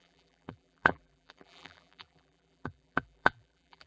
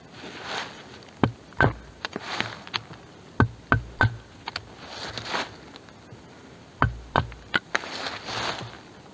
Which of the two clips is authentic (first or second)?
second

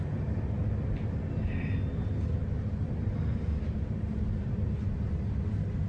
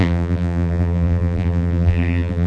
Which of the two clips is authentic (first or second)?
first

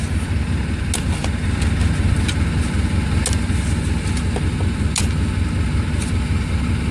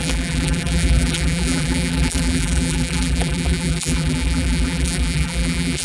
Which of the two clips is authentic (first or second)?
first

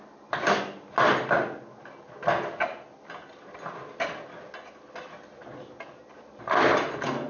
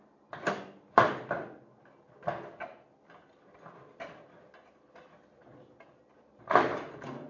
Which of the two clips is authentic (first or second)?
first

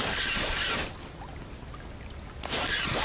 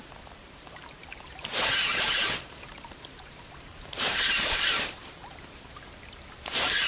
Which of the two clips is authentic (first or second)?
first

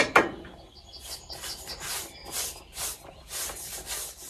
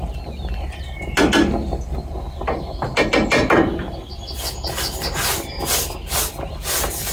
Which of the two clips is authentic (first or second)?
second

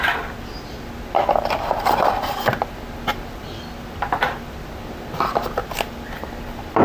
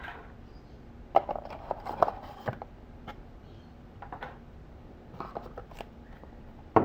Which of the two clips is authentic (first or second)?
first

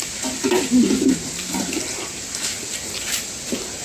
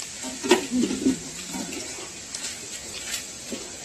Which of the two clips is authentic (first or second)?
first